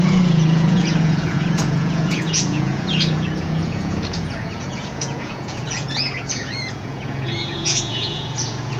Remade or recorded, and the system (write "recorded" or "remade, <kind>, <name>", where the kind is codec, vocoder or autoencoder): remade, vocoder, Vocos